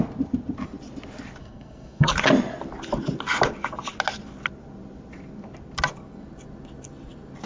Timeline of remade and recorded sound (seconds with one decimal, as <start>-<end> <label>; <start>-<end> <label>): 0.0-1.4 recorded; 1.4-2.1 remade; 2.1-7.5 recorded